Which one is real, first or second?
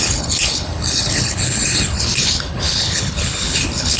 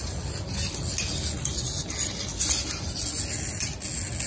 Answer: second